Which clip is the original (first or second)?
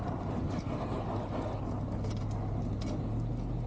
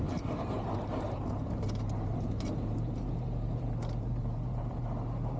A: first